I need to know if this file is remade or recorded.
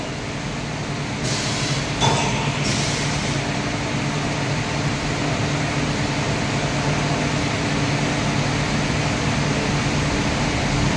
recorded